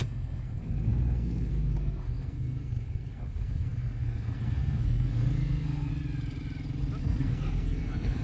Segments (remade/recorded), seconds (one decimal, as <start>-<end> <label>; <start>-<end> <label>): 0.0-5.9 remade; 5.9-7.0 recorded; 7.0-8.2 remade